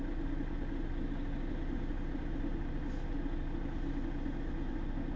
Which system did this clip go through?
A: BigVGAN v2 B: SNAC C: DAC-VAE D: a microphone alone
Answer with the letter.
D